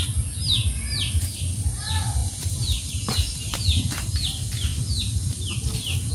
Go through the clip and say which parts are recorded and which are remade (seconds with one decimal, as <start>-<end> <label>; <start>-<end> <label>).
0.0-2.2 recorded; 2.2-4.1 remade; 4.1-4.7 recorded; 4.7-6.1 remade